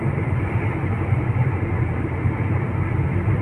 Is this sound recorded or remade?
remade